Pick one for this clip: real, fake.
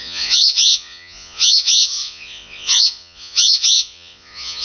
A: fake